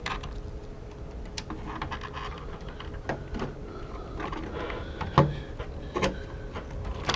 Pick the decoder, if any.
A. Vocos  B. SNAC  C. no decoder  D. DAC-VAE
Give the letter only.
C